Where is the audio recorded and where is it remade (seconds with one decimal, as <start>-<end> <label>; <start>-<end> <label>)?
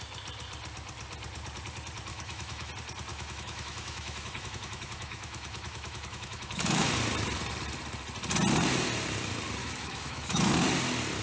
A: 0.0-2.1 recorded; 2.1-2.7 remade; 2.7-3.1 recorded; 3.1-6.9 remade; 6.9-9.6 recorded; 9.6-10.5 remade; 10.5-11.2 recorded